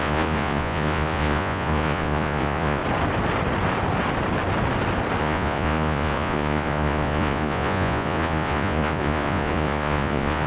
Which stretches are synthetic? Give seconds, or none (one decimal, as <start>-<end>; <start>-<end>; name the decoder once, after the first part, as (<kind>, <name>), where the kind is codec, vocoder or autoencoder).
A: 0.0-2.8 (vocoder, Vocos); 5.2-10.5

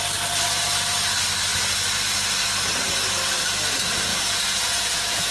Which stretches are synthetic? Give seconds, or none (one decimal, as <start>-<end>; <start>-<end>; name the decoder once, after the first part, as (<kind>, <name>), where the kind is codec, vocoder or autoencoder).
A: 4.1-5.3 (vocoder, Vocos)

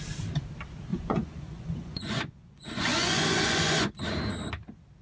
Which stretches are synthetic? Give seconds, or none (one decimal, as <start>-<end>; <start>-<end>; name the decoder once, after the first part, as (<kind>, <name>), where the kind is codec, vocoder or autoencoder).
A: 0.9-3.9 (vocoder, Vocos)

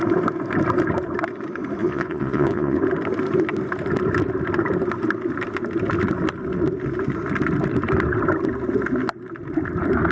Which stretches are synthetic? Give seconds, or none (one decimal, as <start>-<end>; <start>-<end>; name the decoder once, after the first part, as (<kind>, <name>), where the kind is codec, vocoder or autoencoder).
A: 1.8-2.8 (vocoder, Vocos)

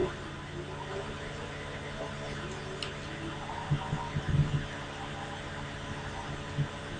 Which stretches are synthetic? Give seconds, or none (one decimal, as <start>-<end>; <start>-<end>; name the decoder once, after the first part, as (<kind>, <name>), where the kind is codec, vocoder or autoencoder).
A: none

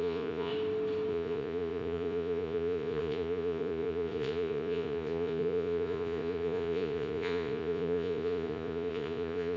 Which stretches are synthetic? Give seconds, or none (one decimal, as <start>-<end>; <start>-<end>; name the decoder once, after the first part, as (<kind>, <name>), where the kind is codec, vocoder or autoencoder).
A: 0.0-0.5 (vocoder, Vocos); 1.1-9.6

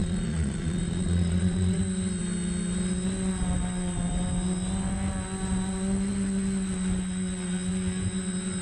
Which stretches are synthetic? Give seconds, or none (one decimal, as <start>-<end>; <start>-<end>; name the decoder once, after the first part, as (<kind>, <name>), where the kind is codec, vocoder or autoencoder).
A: 0.0-1.8 (vocoder, Vocos)